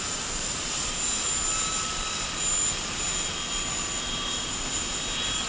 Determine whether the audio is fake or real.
fake